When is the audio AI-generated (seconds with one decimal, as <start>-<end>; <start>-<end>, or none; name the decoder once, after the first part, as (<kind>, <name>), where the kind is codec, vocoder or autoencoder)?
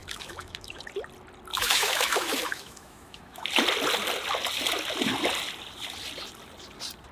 0.0-0.8 (autoencoder, DAC-VAE); 1.5-3.5